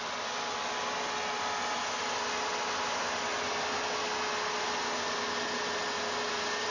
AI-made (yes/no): no